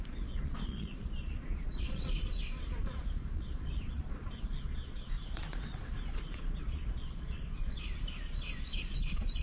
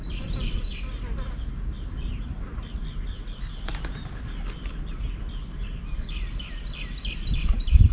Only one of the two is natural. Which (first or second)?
second